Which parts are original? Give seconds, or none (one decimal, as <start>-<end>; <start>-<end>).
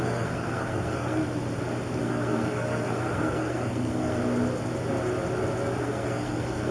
1.2-2.0; 4.2-5.8